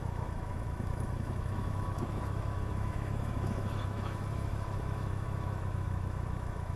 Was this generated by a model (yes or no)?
yes